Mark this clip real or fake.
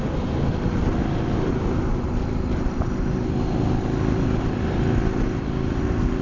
real